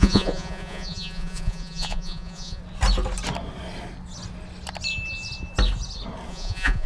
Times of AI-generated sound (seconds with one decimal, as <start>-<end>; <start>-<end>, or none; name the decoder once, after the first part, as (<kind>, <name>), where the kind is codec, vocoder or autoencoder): 0.0-2.6 (vocoder, Vocos); 6.3-6.9